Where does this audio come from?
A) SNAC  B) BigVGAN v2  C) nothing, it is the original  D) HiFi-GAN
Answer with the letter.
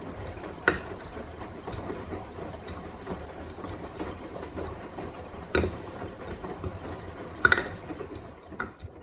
B